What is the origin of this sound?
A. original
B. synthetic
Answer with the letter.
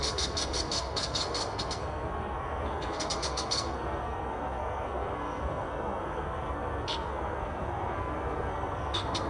B